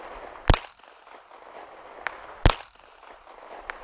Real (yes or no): yes